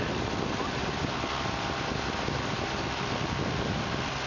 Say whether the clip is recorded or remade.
recorded